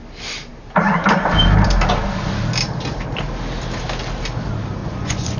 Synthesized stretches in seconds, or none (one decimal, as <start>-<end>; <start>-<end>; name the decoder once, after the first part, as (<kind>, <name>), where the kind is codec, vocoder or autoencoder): 4.8-5.4 (vocoder, Vocos)